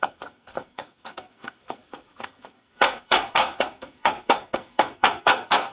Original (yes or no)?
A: no